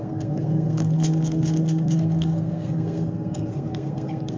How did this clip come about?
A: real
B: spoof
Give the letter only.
B